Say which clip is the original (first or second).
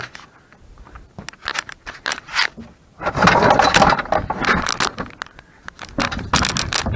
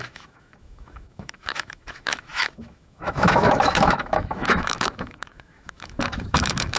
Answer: first